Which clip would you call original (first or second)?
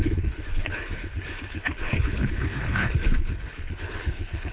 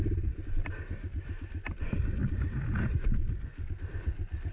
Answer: second